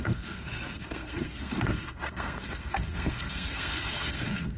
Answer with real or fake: fake